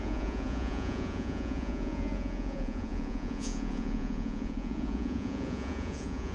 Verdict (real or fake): fake